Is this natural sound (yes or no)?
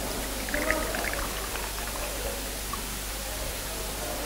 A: yes